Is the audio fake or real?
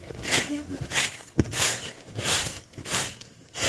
fake